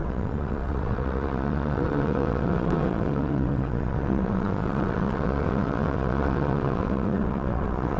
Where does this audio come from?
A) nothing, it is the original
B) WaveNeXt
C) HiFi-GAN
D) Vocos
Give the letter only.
B